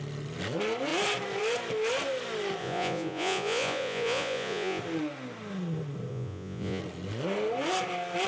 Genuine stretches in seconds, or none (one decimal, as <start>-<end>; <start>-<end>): 0.0-2.6; 4.8-6.1; 6.8-8.3

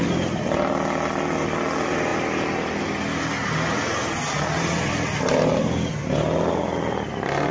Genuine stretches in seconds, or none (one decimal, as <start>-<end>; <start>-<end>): 0.0-7.5

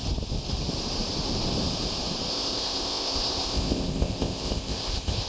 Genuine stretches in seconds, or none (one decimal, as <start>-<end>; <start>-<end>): 0.0-2.3